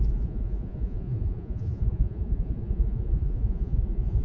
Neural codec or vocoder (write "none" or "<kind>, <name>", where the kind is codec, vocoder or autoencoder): vocoder, Vocos